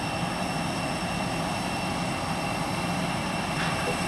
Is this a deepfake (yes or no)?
no